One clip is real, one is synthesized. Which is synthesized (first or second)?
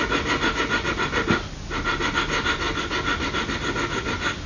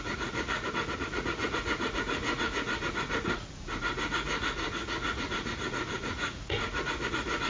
second